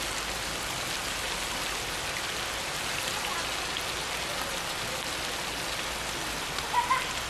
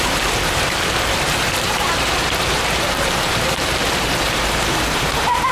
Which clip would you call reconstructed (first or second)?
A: second